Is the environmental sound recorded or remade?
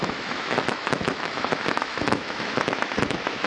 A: remade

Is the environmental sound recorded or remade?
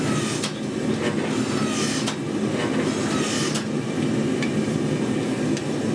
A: recorded